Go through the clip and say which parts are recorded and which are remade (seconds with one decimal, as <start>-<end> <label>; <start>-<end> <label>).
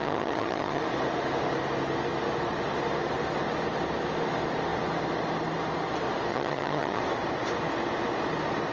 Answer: 0.0-0.8 remade; 0.8-6.3 recorded; 6.3-7.0 remade; 7.0-8.7 recorded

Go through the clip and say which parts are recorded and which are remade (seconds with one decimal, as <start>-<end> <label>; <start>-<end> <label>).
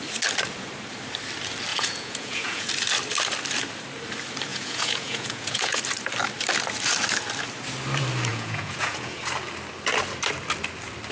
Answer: 0.0-1.7 recorded; 1.7-2.7 remade; 2.7-4.5 recorded; 4.5-5.8 remade; 5.8-8.3 recorded; 8.3-9.2 remade; 9.2-11.1 recorded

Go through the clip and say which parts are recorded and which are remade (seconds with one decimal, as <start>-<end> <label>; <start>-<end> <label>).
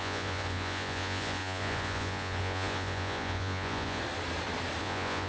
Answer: 0.0-4.0 remade; 4.0-4.8 recorded; 4.8-5.3 remade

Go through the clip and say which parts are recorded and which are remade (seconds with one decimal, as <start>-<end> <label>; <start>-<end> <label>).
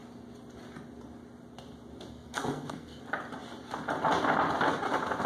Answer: 0.0-2.1 recorded; 2.1-3.0 remade; 3.0-5.3 recorded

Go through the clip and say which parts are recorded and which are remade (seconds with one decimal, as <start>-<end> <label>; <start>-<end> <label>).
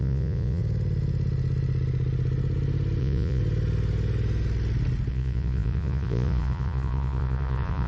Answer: 0.0-0.6 remade; 0.6-3.0 recorded; 3.0-3.4 remade; 3.4-5.1 recorded; 5.1-7.9 remade